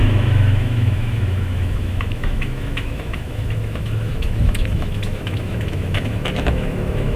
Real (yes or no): no